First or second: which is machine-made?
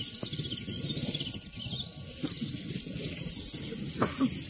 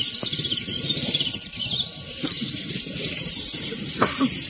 second